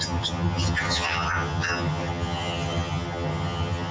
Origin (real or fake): fake